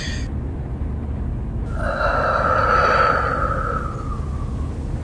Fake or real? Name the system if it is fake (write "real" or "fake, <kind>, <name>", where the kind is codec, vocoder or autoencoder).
real